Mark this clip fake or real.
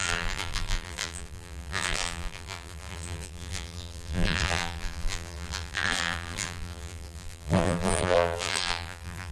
fake